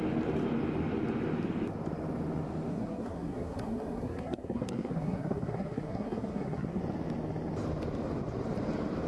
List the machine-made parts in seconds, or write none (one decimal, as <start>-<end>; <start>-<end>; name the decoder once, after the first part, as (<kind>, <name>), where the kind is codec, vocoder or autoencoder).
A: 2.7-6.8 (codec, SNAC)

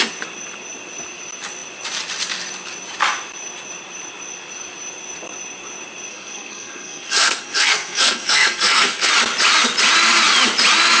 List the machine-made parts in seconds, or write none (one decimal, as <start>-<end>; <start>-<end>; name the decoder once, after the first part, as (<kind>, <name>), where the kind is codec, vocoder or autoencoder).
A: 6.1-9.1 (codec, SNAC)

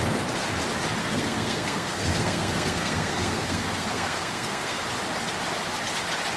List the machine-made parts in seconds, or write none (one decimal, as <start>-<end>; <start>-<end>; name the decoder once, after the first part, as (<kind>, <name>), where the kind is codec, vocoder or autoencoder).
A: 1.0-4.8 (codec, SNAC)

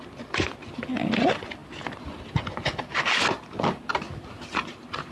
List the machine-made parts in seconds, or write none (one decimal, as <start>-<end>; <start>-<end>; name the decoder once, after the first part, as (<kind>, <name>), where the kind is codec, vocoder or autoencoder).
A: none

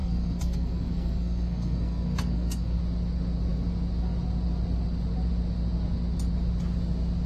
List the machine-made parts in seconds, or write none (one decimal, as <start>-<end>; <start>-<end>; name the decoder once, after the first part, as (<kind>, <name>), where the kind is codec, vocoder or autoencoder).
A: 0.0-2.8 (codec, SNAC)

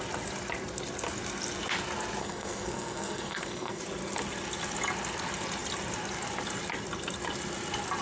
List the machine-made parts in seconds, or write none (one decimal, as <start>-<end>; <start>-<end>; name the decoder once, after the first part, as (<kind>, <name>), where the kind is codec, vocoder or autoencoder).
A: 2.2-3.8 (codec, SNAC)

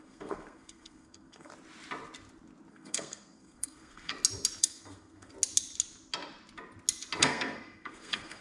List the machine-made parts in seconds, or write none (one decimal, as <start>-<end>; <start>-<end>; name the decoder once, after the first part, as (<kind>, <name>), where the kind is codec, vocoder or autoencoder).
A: 0.0-1.5 (codec, SNAC); 2.7-4.1; 4.6-5.3; 7.2-8.4